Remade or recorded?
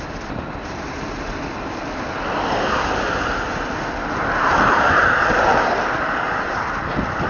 recorded